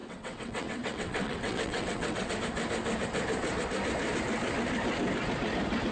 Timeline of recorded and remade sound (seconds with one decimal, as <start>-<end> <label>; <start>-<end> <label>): 0.0-2.3 remade; 2.3-5.9 recorded